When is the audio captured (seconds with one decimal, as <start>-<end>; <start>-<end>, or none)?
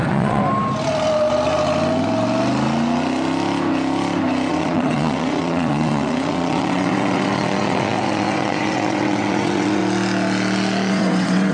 0.4-4.5; 9.8-10.9